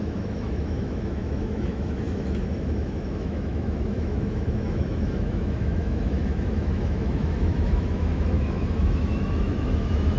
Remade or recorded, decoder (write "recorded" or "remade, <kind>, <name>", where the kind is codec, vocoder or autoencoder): remade, autoencoder, DAC-VAE